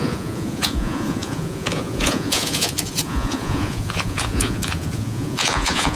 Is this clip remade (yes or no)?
yes